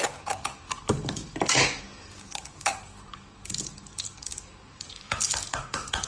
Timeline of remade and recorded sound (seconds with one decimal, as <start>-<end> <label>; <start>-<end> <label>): 0.0-6.1 remade